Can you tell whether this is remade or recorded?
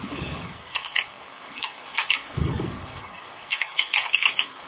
remade